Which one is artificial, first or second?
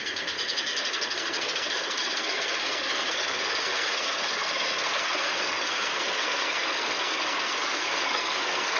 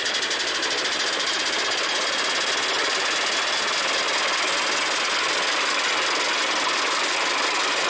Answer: first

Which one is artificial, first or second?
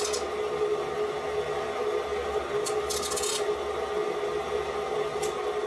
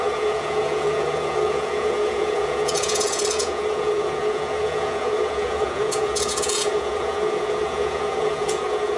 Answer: second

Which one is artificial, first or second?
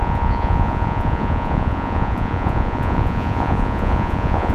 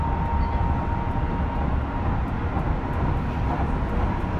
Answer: first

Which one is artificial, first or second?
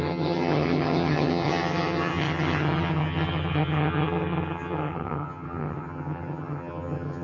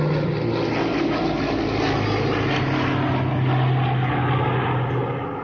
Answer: first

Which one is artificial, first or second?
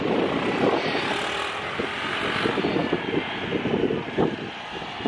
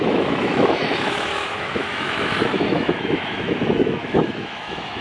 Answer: second